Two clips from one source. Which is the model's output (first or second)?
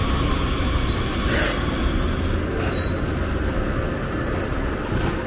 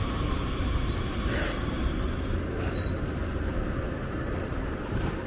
second